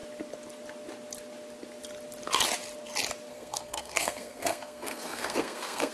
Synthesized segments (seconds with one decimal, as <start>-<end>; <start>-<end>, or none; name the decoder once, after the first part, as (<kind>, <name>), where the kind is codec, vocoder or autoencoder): 3.3-5.9 (codec, SNAC)